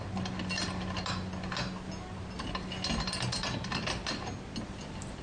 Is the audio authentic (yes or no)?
yes